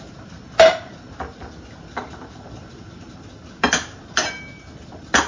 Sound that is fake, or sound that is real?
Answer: real